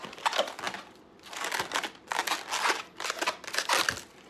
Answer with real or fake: real